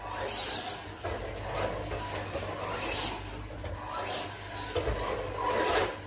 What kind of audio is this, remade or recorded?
recorded